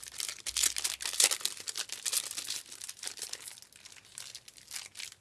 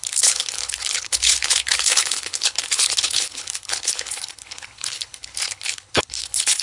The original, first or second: first